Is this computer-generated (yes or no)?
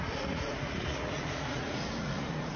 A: yes